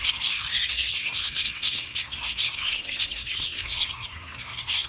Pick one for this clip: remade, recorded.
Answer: remade